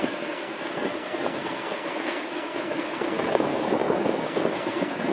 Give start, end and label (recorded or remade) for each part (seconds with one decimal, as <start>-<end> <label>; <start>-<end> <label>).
0.0-5.1 remade